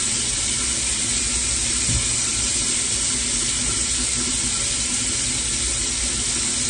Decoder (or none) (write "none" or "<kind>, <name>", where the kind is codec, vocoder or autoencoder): none